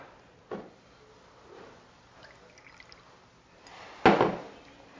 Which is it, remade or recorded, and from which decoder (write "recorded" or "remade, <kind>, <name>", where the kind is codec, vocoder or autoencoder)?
recorded